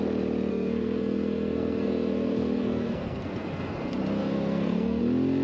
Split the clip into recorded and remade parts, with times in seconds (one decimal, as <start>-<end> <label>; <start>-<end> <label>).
0.0-0.5 recorded; 0.5-3.7 remade; 3.7-4.2 recorded; 4.2-5.0 remade; 5.0-5.4 recorded